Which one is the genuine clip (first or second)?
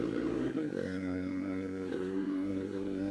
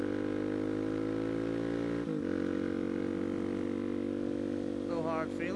second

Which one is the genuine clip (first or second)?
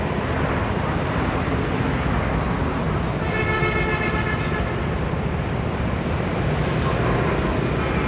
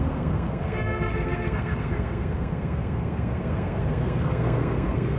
first